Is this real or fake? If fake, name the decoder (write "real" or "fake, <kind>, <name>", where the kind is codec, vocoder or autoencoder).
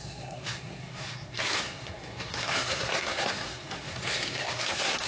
fake, codec, SNAC